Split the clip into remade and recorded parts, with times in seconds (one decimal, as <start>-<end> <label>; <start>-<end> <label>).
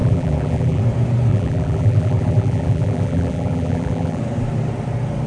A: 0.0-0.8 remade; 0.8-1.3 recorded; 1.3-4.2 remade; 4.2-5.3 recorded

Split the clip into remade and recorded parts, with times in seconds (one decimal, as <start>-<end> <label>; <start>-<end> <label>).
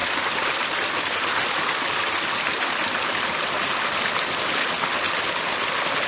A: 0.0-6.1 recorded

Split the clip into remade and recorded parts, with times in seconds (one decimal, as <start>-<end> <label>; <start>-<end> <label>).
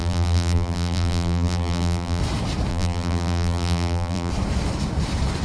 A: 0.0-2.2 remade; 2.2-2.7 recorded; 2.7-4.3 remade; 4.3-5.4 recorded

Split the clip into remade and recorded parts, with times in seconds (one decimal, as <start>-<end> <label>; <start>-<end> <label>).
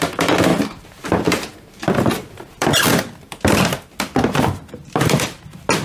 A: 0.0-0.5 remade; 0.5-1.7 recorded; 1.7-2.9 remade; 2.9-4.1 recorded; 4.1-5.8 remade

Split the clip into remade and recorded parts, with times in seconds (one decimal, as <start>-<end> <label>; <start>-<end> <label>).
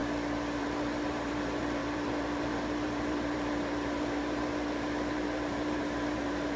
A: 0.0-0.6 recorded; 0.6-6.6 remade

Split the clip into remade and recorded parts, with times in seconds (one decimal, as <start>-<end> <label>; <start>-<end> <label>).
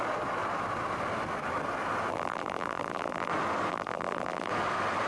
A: 0.0-2.1 recorded; 2.1-3.3 remade; 3.3-3.7 recorded; 3.7-4.5 remade; 4.5-5.1 recorded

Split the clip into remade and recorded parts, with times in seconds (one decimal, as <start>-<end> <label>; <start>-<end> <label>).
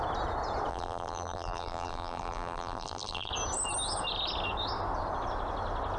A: 0.0-0.7 recorded; 0.7-3.3 remade; 3.3-6.0 recorded